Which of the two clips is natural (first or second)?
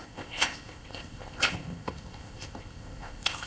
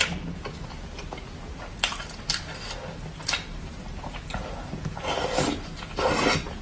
second